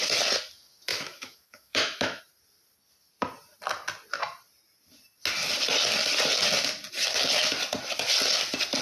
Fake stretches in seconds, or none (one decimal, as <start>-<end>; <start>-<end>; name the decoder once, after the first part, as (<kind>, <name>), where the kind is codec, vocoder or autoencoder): 0.9-2.2 (autoencoder, DAC-VAE)